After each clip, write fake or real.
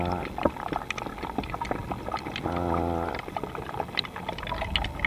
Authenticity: real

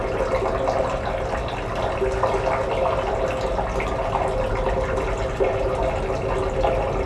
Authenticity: real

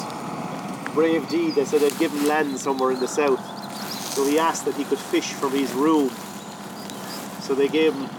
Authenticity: real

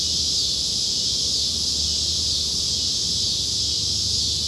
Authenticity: real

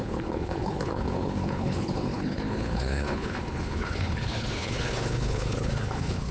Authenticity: fake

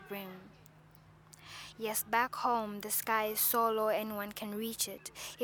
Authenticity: real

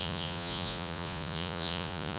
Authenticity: fake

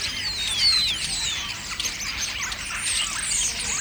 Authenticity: real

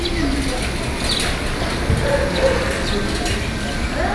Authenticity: real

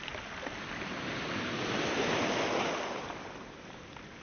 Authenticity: real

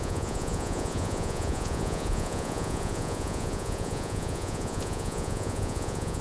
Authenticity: fake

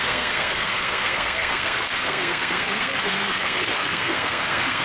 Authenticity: fake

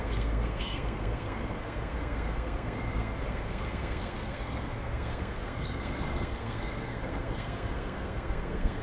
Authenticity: fake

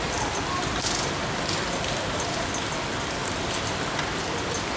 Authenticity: fake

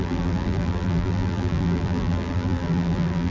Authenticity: fake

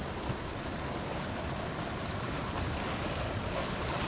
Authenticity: real